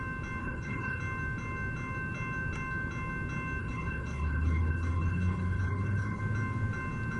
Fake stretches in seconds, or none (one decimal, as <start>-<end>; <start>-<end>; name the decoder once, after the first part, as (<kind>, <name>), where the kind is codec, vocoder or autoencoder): 0.4-1.0 (codec, HILCodec); 3.6-6.2